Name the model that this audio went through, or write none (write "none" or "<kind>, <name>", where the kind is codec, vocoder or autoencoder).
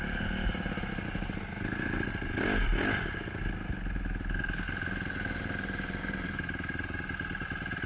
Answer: none